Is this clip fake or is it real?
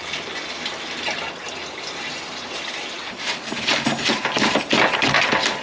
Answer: real